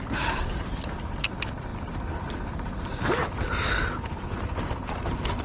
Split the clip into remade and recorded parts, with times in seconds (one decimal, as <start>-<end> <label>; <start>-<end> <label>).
0.0-5.4 recorded